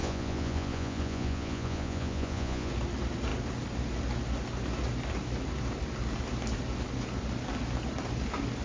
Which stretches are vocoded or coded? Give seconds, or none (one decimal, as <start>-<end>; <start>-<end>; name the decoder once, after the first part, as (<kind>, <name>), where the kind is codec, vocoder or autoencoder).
0.0-2.7 (vocoder, Vocos)